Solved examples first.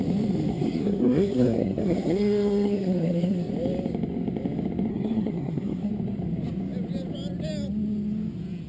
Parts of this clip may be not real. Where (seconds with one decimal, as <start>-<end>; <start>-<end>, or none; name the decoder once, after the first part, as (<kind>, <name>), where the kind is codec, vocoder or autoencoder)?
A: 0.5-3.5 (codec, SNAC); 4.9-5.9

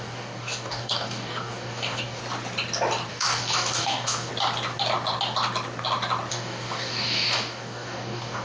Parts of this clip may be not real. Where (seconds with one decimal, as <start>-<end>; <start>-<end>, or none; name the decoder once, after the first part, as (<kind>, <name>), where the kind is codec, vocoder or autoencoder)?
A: 0.0-2.2 (codec, DAC); 3.1-4.3; 6.3-8.4

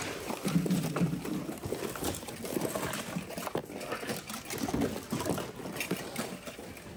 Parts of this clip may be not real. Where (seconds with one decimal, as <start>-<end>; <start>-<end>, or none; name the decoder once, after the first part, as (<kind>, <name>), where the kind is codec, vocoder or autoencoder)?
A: none

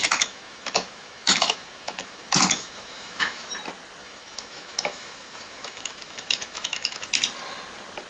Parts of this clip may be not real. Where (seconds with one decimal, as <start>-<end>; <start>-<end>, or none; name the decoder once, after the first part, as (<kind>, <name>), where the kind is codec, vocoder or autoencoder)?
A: 0.0-3.5 (autoencoder, DAC-VAE); 4.0-7.1

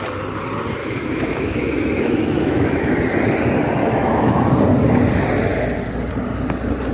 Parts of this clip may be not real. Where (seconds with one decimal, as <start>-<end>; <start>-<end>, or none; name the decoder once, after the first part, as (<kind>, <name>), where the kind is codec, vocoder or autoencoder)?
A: 0.8-2.9 (autoencoder, DAC-VAE); 3.8-4.5

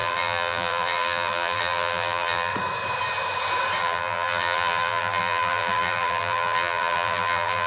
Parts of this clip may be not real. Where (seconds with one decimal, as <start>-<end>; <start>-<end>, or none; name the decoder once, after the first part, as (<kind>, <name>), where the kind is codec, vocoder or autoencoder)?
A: 0.0-2.5 (vocoder, BigVGAN v2); 3.8-7.7